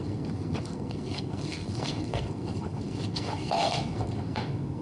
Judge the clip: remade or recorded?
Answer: remade